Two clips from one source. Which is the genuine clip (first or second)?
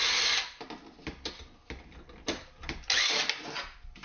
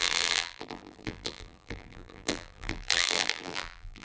first